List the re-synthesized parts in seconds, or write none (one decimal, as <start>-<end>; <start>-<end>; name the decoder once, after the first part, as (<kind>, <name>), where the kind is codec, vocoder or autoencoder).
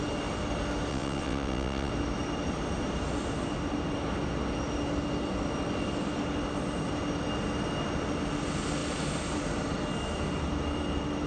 0.9-1.9 (vocoder, WaveNeXt)